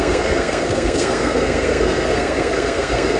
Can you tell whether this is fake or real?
fake